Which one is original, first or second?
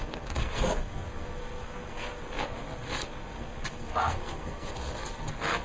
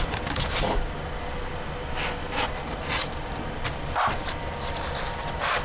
second